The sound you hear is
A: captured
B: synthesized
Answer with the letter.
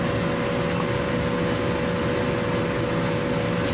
A